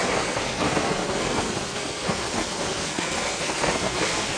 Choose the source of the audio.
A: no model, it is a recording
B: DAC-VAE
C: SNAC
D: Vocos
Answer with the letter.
C